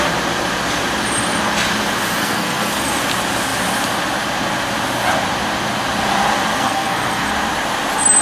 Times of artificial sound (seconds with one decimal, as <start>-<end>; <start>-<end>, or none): 2.2-3.0; 6.5-7.3